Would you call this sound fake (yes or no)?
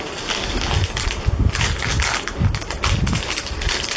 no